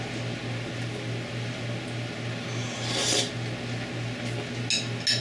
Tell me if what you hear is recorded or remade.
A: recorded